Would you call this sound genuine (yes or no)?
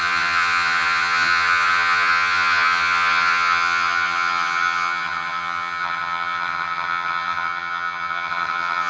no